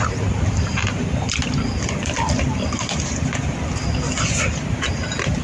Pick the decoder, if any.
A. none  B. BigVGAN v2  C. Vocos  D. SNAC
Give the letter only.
B